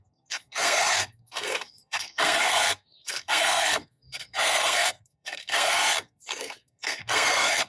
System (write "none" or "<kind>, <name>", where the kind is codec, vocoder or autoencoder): codec, SNAC